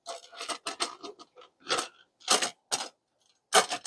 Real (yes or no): yes